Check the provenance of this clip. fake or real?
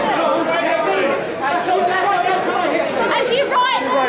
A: real